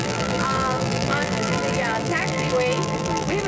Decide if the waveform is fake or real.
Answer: fake